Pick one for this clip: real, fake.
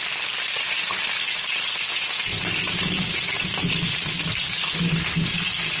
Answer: real